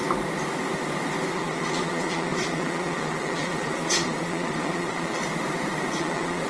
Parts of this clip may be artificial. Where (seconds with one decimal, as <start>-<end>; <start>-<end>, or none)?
1.3-5.2; 6.0-6.5